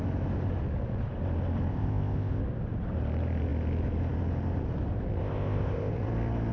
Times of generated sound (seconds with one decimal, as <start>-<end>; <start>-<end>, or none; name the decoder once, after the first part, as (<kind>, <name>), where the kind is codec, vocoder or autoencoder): 1.7-2.4 (codec, ZipCodec); 5.2-5.9